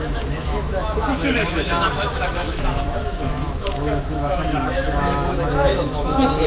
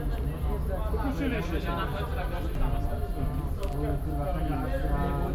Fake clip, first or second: first